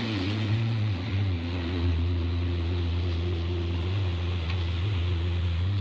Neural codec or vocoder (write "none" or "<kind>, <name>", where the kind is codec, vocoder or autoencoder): vocoder, Vocos